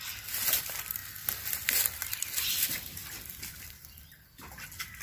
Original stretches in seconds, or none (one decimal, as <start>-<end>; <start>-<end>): 0.0-5.0